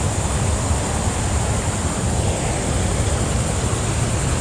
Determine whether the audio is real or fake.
real